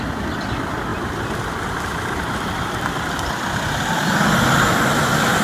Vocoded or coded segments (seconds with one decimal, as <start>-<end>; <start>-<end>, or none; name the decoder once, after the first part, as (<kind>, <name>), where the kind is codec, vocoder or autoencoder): 0.9-4.1 (vocoder, BigVGAN v2)